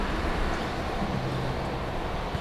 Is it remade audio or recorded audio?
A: recorded